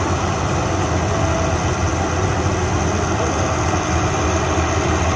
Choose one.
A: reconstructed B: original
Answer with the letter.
B